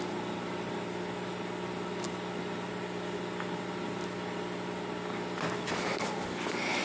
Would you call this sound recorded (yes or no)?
yes